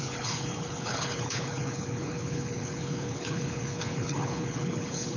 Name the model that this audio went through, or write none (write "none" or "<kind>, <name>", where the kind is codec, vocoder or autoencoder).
codec, HILCodec